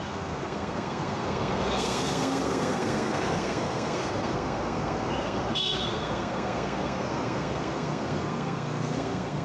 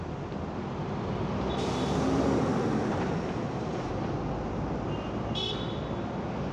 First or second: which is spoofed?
first